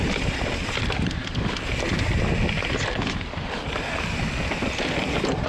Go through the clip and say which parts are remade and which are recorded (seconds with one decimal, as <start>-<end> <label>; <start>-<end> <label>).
0.0-1.2 remade; 1.2-1.8 recorded; 1.8-5.5 remade